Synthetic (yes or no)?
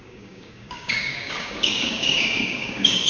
yes